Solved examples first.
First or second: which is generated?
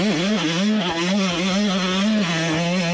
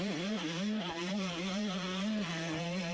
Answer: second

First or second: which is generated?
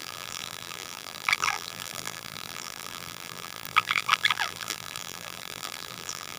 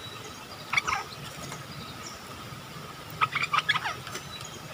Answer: first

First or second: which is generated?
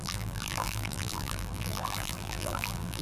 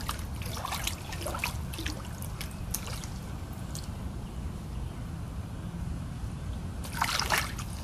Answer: first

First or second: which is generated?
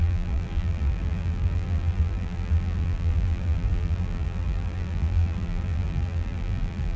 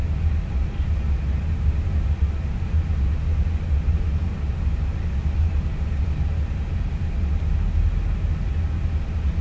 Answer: first